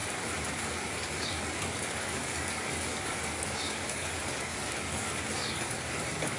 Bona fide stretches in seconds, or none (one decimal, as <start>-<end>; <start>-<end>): 0.0-0.5